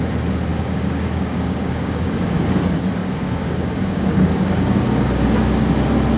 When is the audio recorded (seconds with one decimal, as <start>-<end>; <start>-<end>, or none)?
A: 0.0-0.5; 2.0-3.0; 5.7-6.2